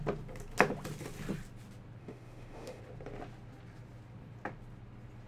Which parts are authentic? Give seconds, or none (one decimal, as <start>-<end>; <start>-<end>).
0.0-2.0; 2.8-5.3